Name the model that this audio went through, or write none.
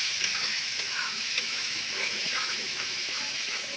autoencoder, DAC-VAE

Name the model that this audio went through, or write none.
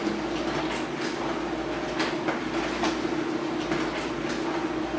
none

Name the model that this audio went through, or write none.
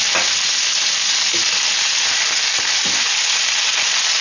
none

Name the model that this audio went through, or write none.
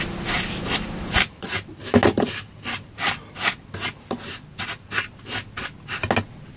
none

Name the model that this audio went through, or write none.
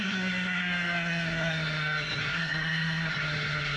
codec, SNAC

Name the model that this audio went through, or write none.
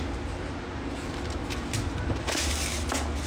none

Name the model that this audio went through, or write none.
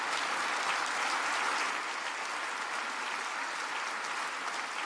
none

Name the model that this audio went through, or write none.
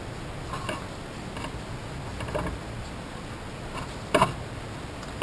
none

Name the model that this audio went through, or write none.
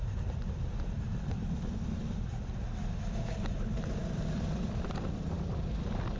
vocoder, BigVGAN v2